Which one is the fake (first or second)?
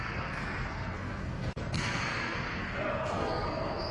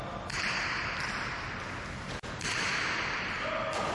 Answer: first